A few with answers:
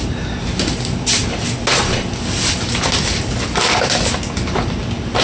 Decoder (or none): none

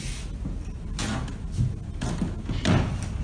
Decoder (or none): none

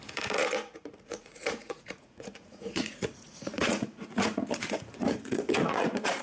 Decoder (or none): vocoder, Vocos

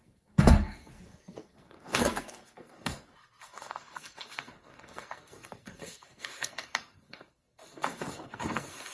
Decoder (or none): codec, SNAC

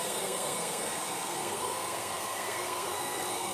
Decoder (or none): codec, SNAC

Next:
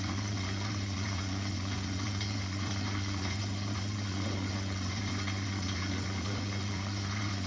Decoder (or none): vocoder, Vocos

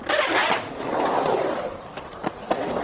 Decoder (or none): none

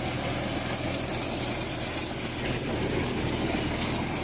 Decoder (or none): none